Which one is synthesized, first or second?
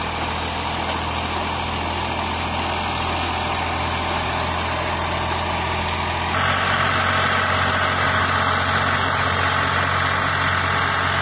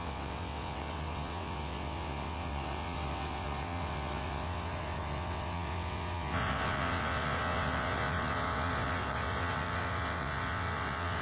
second